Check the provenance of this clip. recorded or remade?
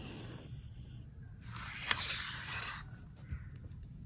recorded